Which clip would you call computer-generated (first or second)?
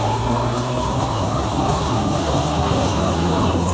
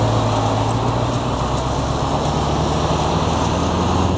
first